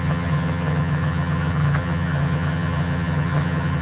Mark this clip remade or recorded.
remade